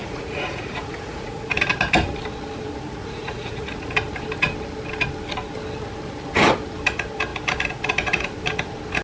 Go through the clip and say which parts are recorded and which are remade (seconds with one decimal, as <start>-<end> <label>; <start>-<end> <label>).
0.0-1.5 remade; 1.5-3.0 recorded; 3.0-3.9 remade; 3.9-9.0 recorded